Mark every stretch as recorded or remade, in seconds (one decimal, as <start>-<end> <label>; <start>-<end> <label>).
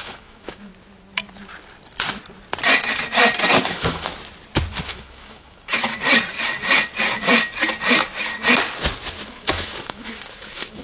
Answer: 0.0-0.7 remade; 0.7-3.6 recorded; 3.6-4.1 remade; 4.1-4.8 recorded; 4.8-5.9 remade; 5.9-9.3 recorded; 9.3-10.8 remade